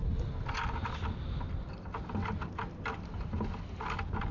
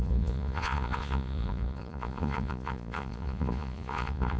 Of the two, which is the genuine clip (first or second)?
first